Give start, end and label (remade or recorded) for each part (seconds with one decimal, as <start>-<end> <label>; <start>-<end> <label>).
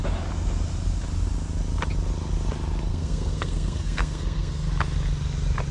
0.0-2.9 recorded; 2.9-4.7 remade; 4.7-5.7 recorded